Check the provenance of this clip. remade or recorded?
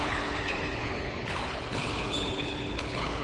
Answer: remade